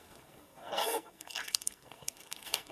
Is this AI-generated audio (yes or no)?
yes